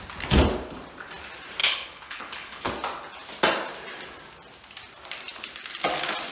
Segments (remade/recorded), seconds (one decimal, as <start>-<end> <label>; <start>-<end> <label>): 0.0-1.6 recorded; 1.6-2.7 remade; 2.7-6.3 recorded